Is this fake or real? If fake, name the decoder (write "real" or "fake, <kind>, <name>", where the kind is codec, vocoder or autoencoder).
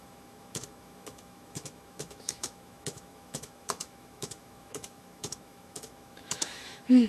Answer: fake, autoencoder, DAC-VAE